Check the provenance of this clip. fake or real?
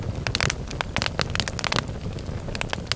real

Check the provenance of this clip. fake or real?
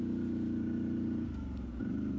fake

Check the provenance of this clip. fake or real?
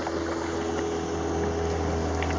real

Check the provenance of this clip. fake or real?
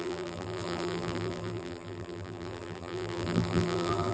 fake